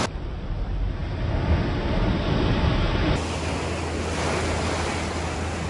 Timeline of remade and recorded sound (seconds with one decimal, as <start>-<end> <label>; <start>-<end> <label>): 0.0-5.7 recorded